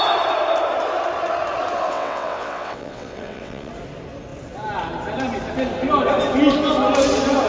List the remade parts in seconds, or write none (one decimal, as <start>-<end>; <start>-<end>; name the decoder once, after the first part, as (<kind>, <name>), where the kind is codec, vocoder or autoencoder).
1.9-3.7 (vocoder, WaveNeXt)

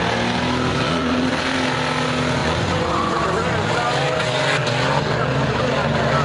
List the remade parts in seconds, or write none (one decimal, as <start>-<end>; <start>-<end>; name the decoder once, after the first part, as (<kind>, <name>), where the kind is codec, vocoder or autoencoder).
0.7-1.4 (vocoder, Vocos); 2.4-3.1

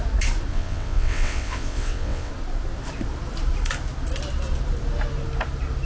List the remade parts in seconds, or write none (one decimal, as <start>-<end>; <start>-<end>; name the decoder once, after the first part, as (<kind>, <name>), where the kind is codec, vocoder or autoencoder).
0.5-2.3 (vocoder, WaveNeXt)

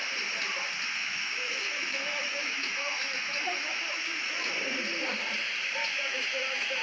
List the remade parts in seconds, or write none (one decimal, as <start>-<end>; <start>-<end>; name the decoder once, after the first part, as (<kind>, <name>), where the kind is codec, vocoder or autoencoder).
1.0-4.5 (autoencoder, DAC-VAE); 5.8-6.8

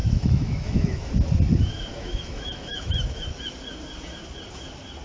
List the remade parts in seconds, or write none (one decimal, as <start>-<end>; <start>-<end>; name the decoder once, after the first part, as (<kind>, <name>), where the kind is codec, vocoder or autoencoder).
0.0-1.1 (autoencoder, DAC-VAE); 1.9-3.5